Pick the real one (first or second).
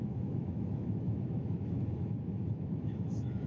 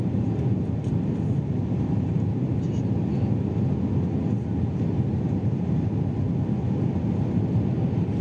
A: second